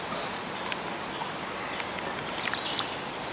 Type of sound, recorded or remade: recorded